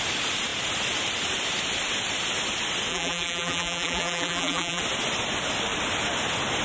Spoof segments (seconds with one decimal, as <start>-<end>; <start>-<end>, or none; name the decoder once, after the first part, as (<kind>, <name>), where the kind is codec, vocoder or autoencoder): 2.9-4.8 (vocoder, BigVGAN v2)